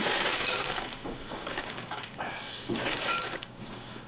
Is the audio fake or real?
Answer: fake